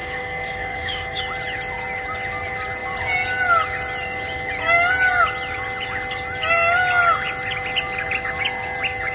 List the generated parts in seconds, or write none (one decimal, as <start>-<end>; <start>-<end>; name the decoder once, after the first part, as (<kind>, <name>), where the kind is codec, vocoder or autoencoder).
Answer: 0.0-1.2 (codec, DAC)